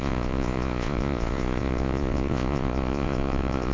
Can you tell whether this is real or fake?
fake